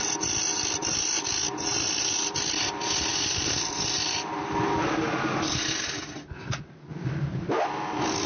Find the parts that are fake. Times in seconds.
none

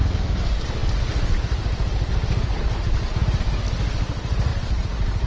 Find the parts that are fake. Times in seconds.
4.5-5.3 (vocoder, BigVGAN v2)

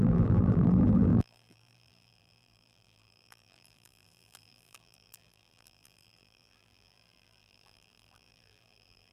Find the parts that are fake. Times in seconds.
0.0-9.1 (vocoder, BigVGAN v2)

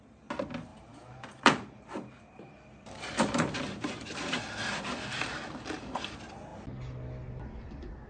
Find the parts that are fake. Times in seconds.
0.7-4.4 (vocoder, BigVGAN v2)

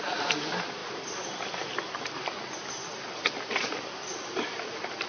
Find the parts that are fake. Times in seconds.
0.0-2.8 (vocoder, BigVGAN v2); 3.8-5.1

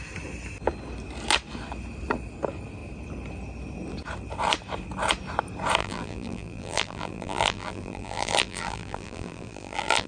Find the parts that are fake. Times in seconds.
5.8-10.1 (vocoder, BigVGAN v2)

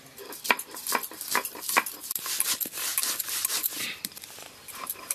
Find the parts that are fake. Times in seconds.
0.0-5.1 (vocoder, BigVGAN v2)